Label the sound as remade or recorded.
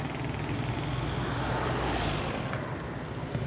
recorded